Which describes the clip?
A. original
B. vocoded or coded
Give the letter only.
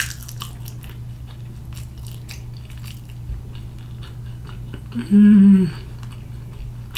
A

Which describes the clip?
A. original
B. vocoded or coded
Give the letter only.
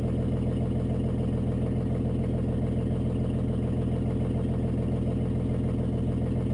A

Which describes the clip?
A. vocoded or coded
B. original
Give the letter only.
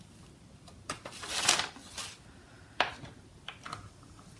B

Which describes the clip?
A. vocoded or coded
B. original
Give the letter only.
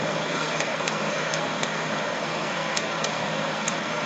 A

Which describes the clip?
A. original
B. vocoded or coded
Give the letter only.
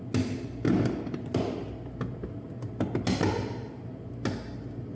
A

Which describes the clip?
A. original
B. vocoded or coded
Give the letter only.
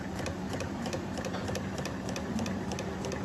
B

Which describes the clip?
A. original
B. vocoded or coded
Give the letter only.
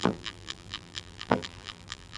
B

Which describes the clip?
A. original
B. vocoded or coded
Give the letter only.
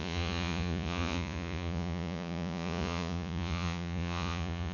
B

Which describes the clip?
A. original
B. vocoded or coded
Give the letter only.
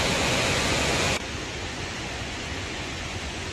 B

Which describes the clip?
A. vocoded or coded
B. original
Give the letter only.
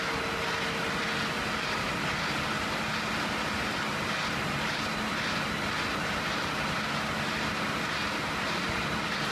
B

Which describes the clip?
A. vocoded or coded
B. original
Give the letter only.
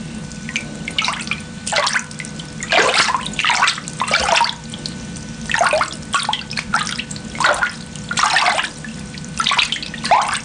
B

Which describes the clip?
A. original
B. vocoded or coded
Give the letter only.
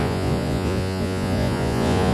B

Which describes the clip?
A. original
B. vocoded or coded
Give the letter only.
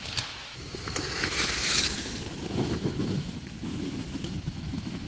B